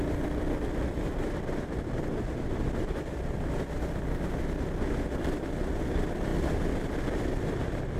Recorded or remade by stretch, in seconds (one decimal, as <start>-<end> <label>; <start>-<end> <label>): 0.0-8.0 recorded